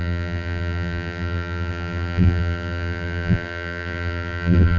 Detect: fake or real fake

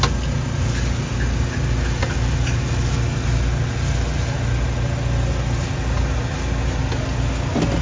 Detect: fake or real real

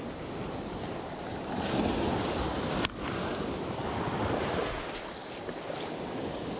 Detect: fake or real real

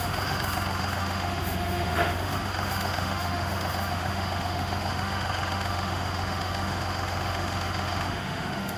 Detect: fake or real fake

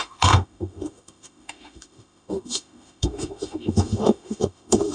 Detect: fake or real fake